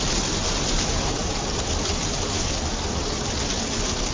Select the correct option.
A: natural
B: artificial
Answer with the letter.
B